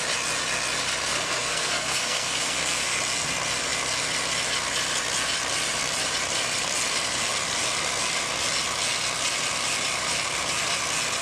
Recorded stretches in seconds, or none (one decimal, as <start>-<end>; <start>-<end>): 0.0-1.1; 3.0-11.2